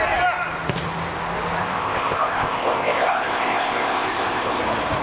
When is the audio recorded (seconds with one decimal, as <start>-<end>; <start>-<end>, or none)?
0.0-1.6; 4.6-5.0